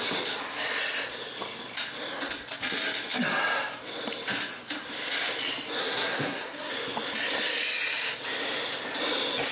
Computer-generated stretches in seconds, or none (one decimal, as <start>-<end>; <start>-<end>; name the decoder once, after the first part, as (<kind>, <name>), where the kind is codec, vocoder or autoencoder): 5.8-6.7 (codec, SNAC)